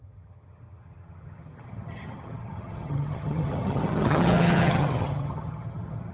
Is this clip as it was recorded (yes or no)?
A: no